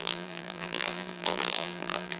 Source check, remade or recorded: remade